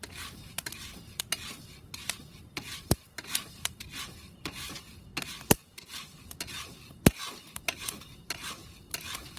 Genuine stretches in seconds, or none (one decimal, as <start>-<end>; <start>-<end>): 5.1-6.4